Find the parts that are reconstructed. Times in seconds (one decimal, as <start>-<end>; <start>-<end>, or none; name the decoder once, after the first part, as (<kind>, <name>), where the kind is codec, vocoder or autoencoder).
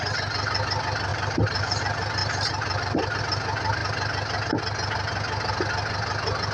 1.1-1.8 (vocoder, BigVGAN v2); 2.2-3.2